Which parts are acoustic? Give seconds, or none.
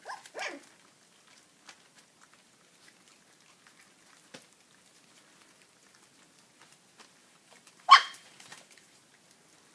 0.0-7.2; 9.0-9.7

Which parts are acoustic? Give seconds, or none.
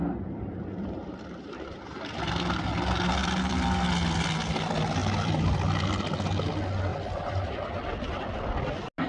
0.0-1.0; 2.3-3.2; 3.9-5.0; 5.8-6.9; 7.5-9.1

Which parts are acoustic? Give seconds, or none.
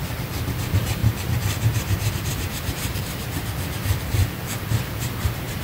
4.2-5.0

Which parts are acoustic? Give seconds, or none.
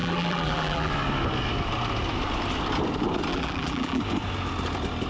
0.9-3.3; 4.0-5.1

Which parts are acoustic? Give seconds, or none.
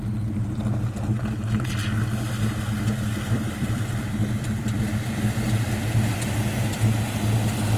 0.0-3.1; 6.1-7.8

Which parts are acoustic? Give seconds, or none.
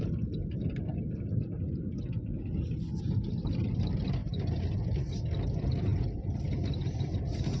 0.0-7.6